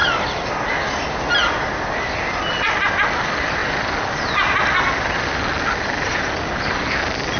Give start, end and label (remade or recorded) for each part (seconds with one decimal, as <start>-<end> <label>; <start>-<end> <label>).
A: 0.0-7.4 recorded